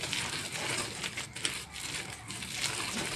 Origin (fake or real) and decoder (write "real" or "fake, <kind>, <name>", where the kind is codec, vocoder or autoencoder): real